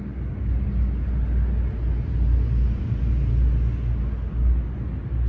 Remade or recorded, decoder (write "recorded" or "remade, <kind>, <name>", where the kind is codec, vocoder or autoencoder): recorded